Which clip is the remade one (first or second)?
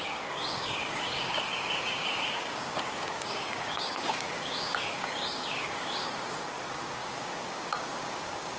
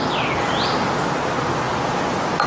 first